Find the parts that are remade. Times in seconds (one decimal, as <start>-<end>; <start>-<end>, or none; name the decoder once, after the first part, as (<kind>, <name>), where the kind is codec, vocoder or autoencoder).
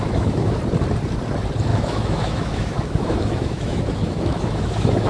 0.0-0.6 (autoencoder, DAC-VAE); 1.7-5.1